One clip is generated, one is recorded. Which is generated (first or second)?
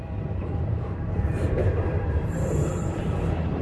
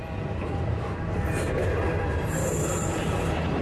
first